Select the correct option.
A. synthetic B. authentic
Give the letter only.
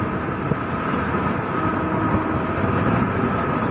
B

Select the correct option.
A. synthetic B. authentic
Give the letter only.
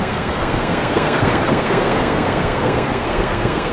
A